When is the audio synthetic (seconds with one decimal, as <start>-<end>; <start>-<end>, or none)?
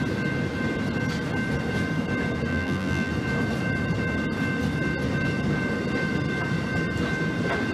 2.5-3.1